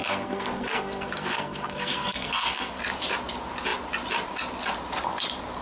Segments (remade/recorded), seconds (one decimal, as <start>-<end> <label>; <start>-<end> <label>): 0.0-2.8 remade; 2.8-5.6 recorded